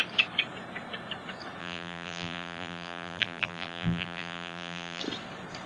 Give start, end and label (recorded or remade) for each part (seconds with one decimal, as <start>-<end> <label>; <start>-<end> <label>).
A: 0.0-1.6 recorded; 1.6-5.0 remade; 5.0-5.7 recorded